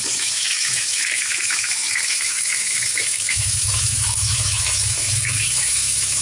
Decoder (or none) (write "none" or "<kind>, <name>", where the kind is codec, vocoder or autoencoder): autoencoder, DAC-VAE